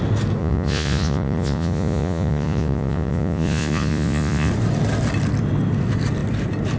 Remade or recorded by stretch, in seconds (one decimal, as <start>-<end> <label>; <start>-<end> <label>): 0.0-0.4 recorded; 0.4-4.5 remade; 4.5-6.8 recorded